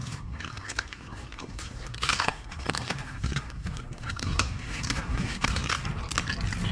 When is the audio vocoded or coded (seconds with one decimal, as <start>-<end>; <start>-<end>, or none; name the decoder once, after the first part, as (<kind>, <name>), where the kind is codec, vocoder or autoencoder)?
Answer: 0.0-5.8 (codec, SNAC)